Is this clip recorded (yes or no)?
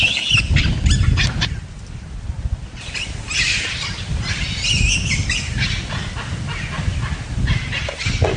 yes